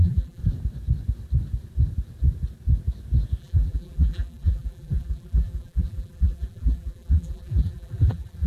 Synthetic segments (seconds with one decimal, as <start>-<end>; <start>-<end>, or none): 0.0-0.4; 3.4-8.5